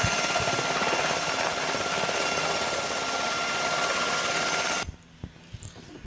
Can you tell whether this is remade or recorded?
remade